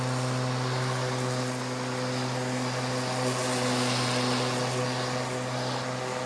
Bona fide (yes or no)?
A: yes